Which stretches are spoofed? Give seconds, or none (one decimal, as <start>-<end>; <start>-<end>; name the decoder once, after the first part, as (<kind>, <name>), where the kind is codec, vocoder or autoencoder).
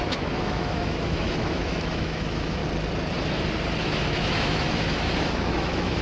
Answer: 0.0-2.6 (autoencoder, DAC-VAE); 3.8-6.0